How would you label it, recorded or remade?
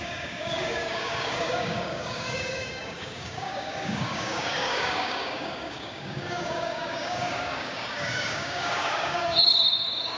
remade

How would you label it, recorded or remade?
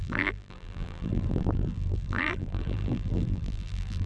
remade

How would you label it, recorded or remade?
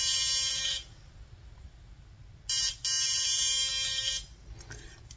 recorded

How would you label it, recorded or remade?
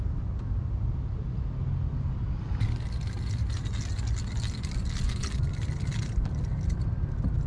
recorded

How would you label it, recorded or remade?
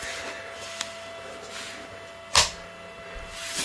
recorded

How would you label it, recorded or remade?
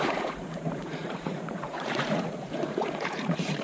remade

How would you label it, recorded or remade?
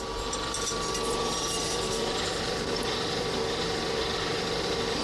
remade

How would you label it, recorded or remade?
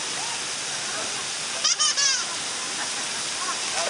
recorded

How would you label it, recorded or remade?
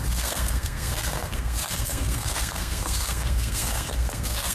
remade